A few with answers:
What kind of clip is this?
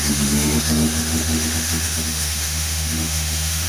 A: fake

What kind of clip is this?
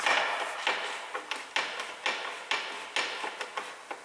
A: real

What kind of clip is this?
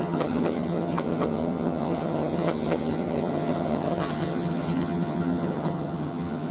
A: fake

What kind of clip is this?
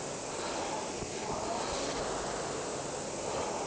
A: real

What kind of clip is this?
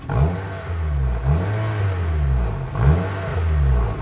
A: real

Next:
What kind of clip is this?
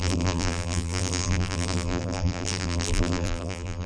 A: fake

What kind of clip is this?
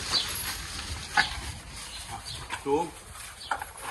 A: real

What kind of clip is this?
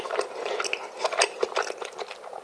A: real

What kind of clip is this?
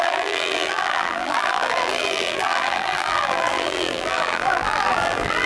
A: fake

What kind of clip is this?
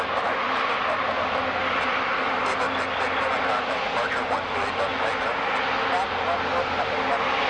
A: real